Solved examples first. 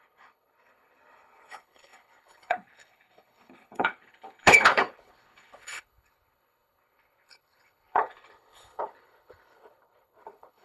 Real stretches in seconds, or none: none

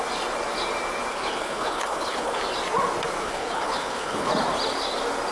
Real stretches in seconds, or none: 0.0-1.1; 2.4-3.2; 4.3-5.3

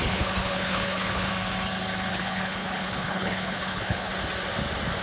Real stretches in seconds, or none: 1.3-2.1; 4.1-5.0

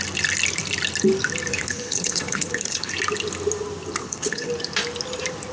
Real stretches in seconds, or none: 0.0-1.5; 2.9-4.0; 4.5-5.5

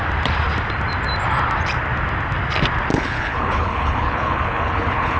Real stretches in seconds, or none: 0.0-2.9

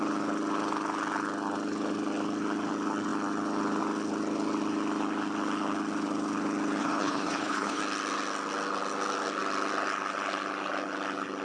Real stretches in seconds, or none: 0.0-6.8; 7.8-11.4